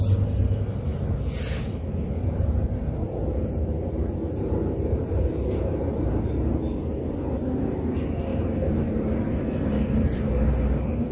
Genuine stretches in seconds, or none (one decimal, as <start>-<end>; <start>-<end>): 0.0-4.0; 6.6-8.3